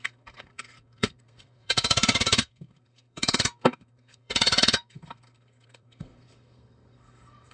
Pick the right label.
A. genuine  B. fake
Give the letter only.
B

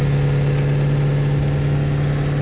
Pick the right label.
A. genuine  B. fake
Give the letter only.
A